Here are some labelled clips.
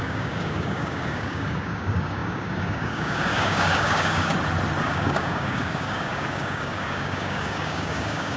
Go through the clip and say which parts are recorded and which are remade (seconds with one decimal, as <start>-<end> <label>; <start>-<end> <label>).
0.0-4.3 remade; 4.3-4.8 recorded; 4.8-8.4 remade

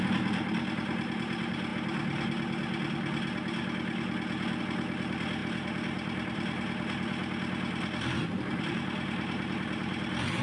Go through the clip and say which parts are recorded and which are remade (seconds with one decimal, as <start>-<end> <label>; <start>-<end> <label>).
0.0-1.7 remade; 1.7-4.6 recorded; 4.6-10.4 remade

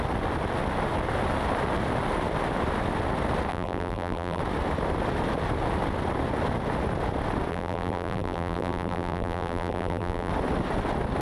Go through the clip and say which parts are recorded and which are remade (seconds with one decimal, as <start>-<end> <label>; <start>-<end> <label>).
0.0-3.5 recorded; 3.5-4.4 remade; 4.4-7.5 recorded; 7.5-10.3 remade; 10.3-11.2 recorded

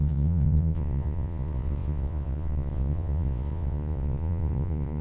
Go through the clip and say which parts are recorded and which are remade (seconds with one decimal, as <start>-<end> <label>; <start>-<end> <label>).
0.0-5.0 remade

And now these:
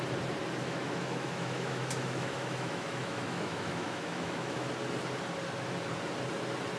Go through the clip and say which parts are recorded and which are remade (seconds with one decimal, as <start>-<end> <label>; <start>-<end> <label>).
0.0-0.6 recorded; 0.6-4.7 remade; 4.7-6.8 recorded

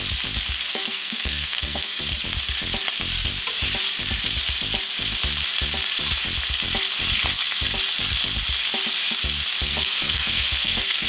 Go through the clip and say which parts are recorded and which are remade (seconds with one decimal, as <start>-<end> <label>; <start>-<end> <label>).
0.0-0.7 recorded; 0.7-2.0 remade; 2.0-9.7 recorded; 9.7-11.1 remade

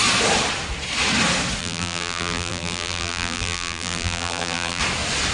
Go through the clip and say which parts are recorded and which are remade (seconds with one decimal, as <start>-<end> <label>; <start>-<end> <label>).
0.0-1.6 recorded; 1.6-4.8 remade; 4.8-5.3 recorded

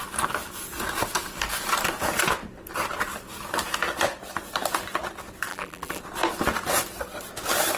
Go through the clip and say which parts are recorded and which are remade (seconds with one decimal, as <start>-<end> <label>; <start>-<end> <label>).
0.0-5.5 recorded; 5.5-6.0 remade; 6.0-7.8 recorded